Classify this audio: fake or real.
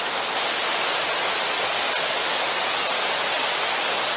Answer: real